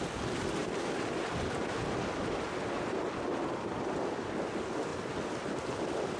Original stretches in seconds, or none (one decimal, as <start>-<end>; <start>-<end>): 0.0-6.2